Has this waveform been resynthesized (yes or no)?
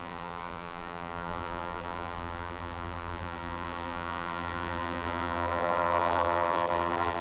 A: yes